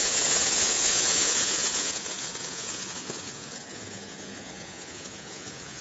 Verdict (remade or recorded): remade